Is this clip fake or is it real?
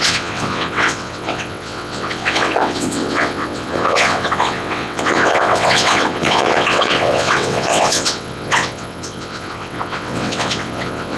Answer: fake